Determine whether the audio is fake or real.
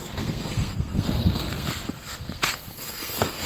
fake